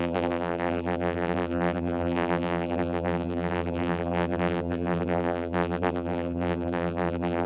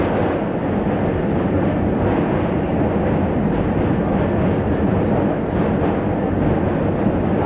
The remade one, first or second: first